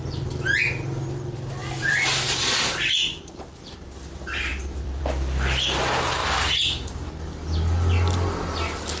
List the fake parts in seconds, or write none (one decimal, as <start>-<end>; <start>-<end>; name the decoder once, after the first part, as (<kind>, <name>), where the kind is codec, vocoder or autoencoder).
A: 1.6-2.7 (vocoder, BigVGAN v2); 4.5-5.0